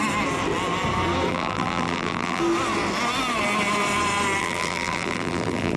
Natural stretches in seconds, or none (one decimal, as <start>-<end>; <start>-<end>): 0.0-1.3; 2.4-4.4